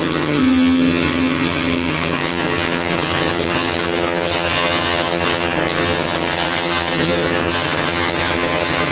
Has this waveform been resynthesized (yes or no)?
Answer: yes